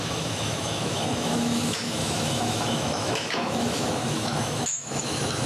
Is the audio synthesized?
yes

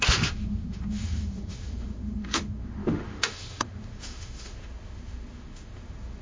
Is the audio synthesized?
yes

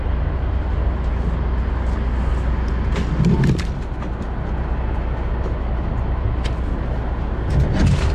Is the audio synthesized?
no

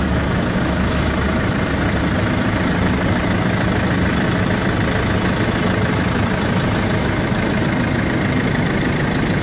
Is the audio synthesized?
no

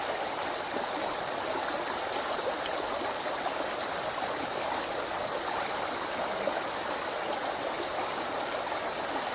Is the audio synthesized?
no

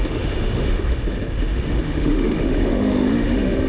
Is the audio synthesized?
yes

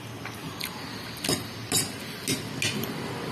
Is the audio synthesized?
no